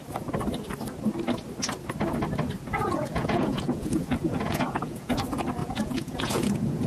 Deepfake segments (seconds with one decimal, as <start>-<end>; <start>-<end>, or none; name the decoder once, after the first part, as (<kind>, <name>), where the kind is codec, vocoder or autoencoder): 2.8-5.1 (vocoder, Vocos); 5.6-6.9